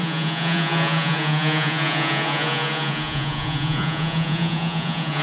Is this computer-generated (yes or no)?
yes